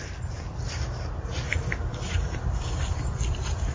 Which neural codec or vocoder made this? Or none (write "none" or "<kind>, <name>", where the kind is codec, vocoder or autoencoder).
none